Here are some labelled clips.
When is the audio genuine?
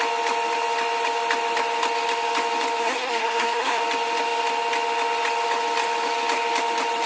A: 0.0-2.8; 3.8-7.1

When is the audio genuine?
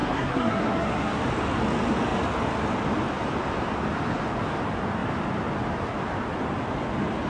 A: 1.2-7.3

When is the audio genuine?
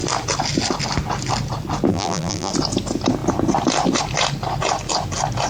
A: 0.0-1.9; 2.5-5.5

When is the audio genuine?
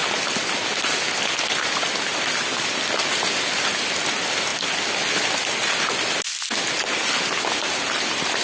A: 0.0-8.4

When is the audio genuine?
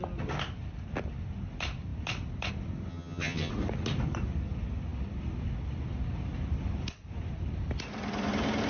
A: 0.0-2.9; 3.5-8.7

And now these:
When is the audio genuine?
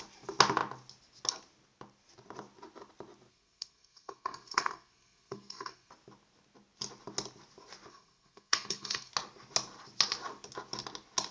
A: 0.0-3.3; 5.9-7.9; 9.1-11.3